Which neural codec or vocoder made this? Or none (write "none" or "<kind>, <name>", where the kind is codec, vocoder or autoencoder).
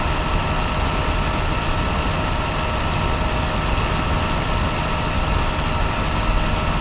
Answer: none